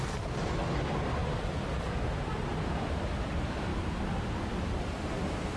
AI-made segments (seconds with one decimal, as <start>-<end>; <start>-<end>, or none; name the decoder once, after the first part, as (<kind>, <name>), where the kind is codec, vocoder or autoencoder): 0.0-3.7 (vocoder, BigVGAN v2); 4.8-5.6